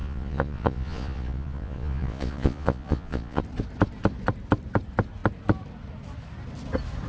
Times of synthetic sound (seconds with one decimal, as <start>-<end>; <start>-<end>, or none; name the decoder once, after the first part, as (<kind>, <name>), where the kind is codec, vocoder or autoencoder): 0.0-3.4 (vocoder, Vocos)